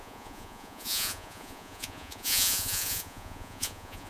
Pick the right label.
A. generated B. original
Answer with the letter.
A